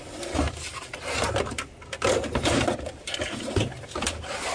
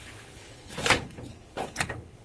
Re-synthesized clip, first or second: second